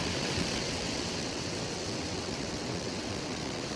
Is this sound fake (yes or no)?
yes